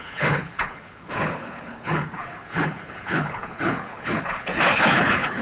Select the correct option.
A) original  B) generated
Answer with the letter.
B